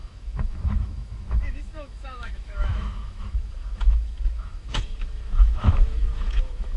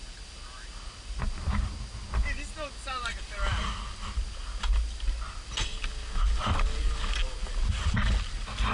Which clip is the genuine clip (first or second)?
second